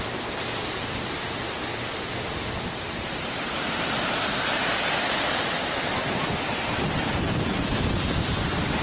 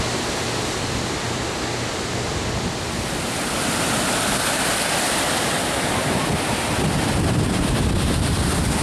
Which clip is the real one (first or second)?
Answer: second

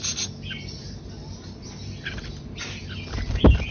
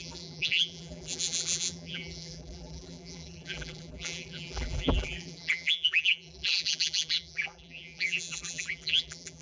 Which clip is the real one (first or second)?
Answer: first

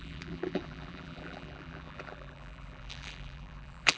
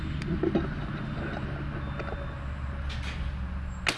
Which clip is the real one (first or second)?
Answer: second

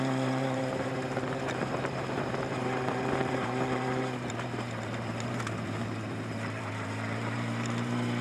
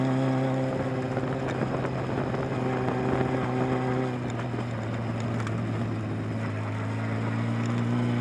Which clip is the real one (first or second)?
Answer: second